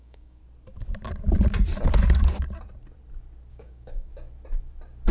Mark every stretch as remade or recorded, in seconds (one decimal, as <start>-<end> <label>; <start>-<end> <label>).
0.0-0.4 remade; 0.4-3.5 recorded; 3.5-4.1 remade; 4.1-5.1 recorded